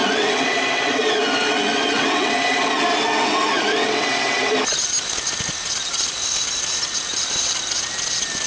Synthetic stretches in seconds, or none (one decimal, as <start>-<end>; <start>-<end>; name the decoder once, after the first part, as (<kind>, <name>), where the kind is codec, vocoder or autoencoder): 0.0-4.5 (vocoder, WaveNeXt)